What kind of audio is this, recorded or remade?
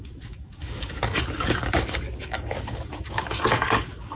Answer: remade